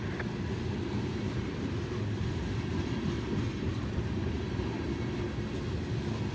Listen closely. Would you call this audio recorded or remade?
recorded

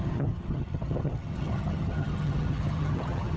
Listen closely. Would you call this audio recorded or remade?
remade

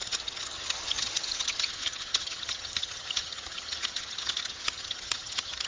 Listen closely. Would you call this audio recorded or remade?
remade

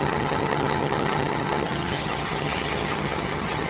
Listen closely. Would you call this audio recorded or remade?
remade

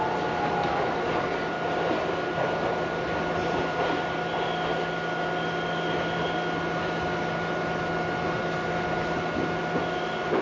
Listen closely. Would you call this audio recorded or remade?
recorded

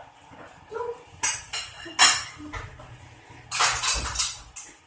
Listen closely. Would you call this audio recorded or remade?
recorded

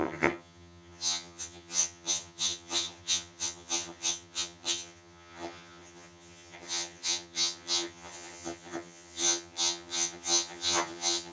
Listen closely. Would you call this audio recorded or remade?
remade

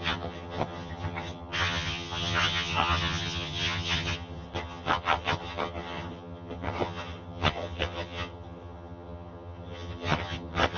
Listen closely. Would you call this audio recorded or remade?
remade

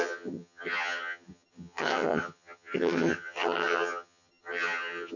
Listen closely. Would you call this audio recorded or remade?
remade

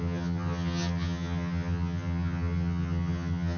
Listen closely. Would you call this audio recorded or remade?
remade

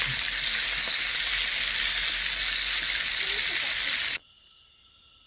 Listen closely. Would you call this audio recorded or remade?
recorded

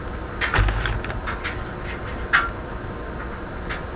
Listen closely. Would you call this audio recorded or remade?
recorded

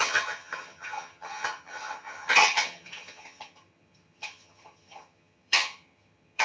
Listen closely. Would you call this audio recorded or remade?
remade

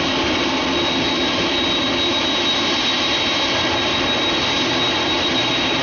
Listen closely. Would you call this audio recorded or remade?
recorded